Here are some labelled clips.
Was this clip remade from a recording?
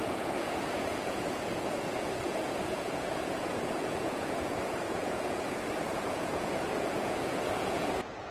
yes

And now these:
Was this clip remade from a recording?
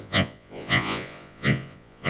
yes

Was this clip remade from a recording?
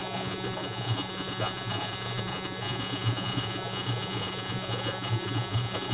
yes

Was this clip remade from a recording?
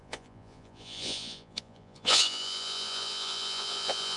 yes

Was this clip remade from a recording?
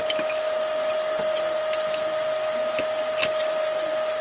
no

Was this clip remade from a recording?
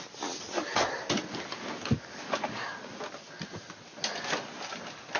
no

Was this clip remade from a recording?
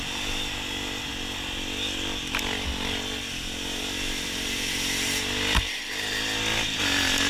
no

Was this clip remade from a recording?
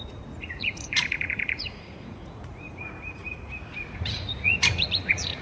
yes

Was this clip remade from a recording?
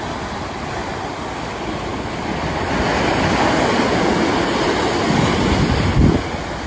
no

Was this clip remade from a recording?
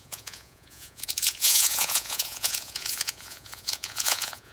yes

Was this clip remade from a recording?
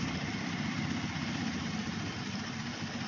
no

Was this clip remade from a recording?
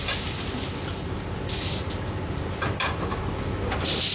no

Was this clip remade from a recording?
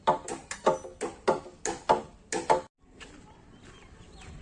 no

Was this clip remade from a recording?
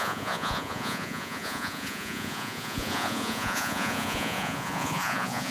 yes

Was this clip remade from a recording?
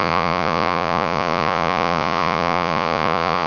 yes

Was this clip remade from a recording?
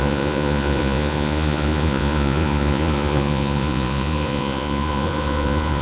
yes